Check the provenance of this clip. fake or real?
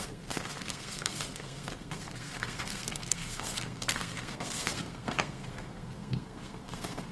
fake